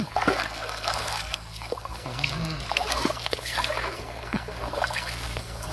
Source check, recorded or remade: remade